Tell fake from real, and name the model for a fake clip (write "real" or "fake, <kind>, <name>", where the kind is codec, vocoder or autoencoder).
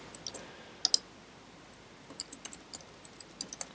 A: real